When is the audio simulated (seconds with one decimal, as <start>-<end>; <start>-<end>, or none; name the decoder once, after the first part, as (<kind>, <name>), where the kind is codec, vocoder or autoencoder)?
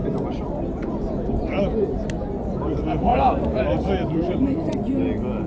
3.1-5.0 (vocoder, BigVGAN v2)